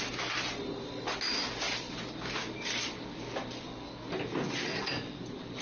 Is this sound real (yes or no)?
yes